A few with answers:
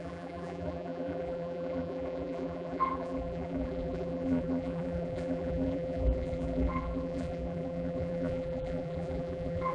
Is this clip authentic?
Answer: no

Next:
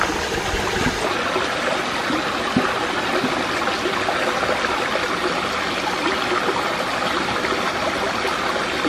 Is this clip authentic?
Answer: yes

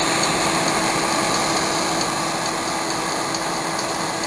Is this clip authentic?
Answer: yes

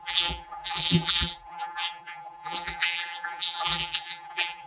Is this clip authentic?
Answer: no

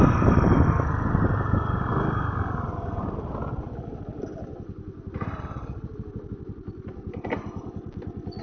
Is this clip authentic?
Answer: yes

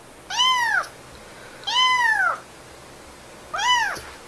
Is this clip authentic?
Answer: yes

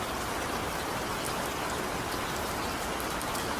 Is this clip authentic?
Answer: yes